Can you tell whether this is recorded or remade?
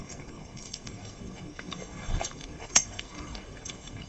remade